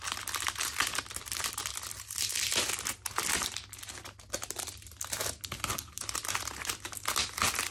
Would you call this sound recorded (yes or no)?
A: yes